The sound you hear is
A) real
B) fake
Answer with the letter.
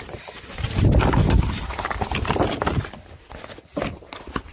A